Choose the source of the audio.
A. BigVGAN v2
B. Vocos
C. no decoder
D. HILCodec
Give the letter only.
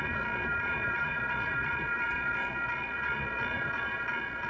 B